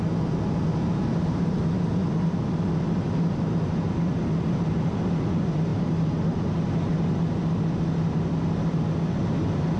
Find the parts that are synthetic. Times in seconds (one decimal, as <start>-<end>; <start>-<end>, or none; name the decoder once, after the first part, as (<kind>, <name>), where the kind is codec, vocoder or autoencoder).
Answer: none